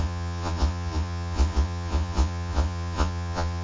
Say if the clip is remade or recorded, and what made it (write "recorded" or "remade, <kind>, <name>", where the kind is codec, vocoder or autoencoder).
remade, vocoder, Vocos